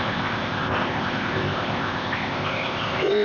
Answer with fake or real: fake